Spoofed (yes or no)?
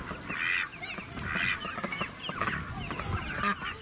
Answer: no